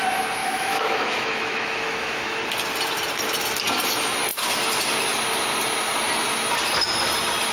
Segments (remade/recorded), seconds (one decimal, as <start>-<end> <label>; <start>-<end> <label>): 0.0-0.4 recorded; 0.4-2.4 remade; 2.4-7.5 recorded